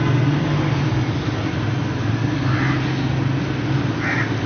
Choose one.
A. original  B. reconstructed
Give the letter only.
A